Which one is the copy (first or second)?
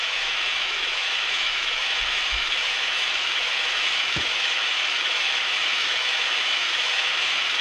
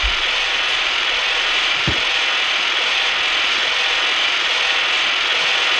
first